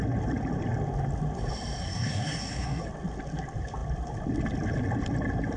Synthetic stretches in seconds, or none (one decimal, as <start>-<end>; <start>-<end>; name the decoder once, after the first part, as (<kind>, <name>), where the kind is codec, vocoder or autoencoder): 1.8-2.8 (codec, SNAC)